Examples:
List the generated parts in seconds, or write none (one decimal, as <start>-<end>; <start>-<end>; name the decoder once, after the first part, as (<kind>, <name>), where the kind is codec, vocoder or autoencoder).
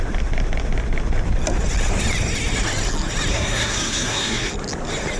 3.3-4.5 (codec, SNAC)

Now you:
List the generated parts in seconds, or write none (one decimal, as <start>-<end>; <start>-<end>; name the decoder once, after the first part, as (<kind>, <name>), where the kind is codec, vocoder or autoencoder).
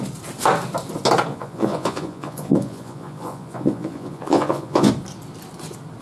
1.3-4.9 (vocoder, Vocos)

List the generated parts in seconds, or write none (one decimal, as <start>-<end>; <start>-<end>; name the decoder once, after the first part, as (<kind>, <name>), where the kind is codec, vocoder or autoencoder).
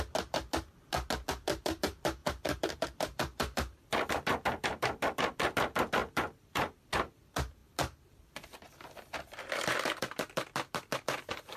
2.2-4.1 (vocoder, BigVGAN v2); 6.0-6.9